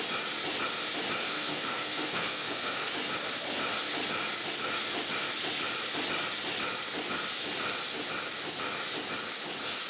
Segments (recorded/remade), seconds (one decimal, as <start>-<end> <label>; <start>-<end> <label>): 0.0-1.2 recorded; 1.2-2.9 remade; 2.9-9.9 recorded

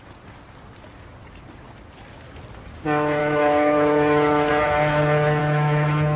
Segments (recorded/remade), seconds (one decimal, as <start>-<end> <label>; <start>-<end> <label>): 0.0-3.2 recorded; 3.2-4.5 remade; 4.5-5.4 recorded; 5.4-6.2 remade